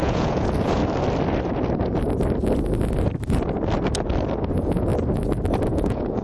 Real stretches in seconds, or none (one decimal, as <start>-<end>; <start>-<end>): 0.8-4.5; 4.9-5.7